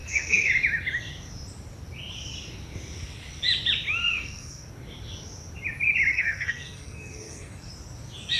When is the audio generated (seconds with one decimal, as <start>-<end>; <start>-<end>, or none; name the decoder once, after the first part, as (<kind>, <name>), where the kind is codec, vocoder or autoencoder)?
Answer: 0.0-0.5 (codec, SNAC); 4.0-4.7; 6.1-7.7